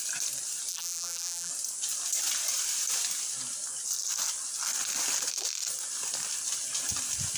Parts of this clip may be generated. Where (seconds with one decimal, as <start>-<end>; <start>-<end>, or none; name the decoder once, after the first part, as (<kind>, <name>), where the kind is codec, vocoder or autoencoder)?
0.7-1.5 (vocoder, BigVGAN v2)